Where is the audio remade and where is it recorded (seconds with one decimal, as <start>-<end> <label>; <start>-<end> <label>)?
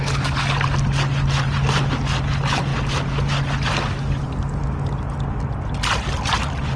0.0-6.8 recorded